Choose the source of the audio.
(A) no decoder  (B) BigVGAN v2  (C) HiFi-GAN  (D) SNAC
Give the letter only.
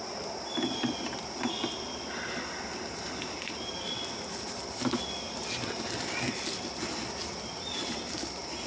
A